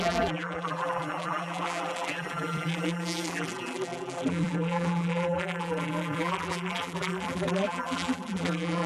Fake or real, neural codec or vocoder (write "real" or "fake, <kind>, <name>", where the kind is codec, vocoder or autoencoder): fake, vocoder, BigVGAN v2